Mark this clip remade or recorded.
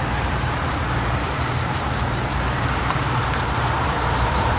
remade